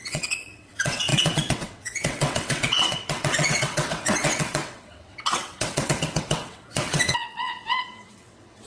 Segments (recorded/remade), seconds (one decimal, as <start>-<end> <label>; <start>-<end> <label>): 0.0-8.7 remade